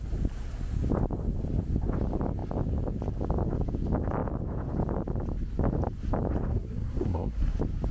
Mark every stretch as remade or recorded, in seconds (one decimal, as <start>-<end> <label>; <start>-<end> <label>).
0.0-6.5 recorded; 6.5-7.5 remade; 7.5-7.9 recorded